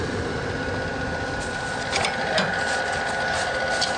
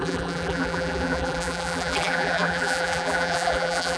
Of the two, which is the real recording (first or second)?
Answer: first